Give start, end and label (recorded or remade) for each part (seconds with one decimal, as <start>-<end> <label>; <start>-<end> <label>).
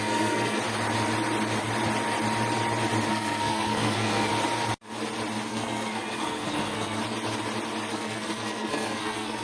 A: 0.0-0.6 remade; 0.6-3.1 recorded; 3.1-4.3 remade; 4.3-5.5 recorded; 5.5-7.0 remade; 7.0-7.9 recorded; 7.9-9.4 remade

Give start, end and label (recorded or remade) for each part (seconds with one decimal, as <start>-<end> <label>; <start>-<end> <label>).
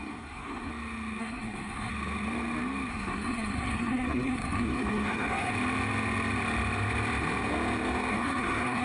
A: 0.0-0.7 remade; 0.7-1.2 recorded; 1.2-1.9 remade; 1.9-2.9 recorded; 2.9-5.5 remade; 5.5-8.1 recorded; 8.1-8.8 remade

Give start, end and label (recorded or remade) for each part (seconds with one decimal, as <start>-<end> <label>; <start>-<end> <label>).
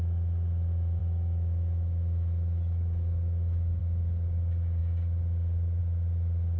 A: 0.0-1.0 recorded; 1.0-3.8 remade; 3.8-6.6 recorded